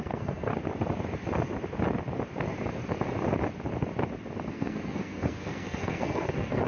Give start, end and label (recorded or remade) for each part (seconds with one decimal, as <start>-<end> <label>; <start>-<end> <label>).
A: 0.0-0.5 remade; 0.5-4.5 recorded; 4.5-6.7 remade

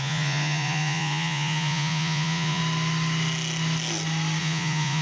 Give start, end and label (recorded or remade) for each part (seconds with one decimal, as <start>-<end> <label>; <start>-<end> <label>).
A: 0.0-2.6 remade; 2.6-4.4 recorded; 4.4-5.0 remade

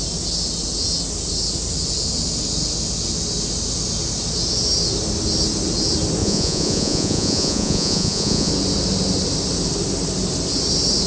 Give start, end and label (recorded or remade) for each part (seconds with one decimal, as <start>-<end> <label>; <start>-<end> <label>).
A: 0.0-6.2 recorded; 6.2-8.5 remade; 8.5-11.1 recorded